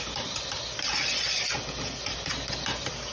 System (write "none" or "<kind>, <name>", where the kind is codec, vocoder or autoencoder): none